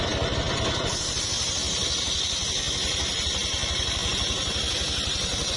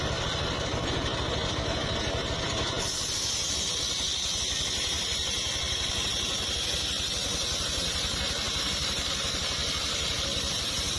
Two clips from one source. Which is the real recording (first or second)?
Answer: second